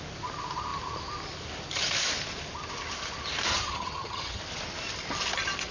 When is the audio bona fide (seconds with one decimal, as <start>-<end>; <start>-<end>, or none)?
0.0-3.5; 4.4-5.7